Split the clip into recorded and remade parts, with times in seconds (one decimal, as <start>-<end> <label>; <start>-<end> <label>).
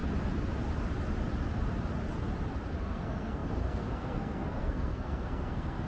0.0-2.8 recorded; 2.8-5.9 remade